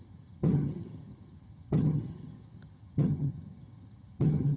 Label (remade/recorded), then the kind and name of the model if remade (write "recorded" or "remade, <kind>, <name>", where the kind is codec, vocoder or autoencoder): remade, vocoder, HiFi-GAN